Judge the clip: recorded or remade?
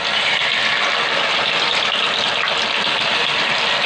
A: recorded